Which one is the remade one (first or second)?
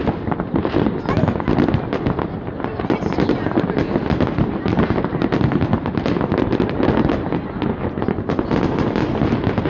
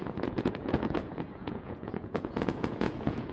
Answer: second